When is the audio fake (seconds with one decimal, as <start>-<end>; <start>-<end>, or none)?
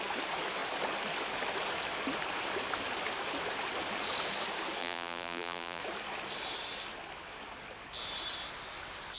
4.8-5.8